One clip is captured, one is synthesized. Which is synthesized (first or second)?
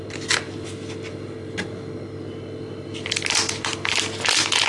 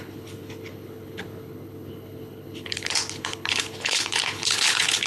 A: second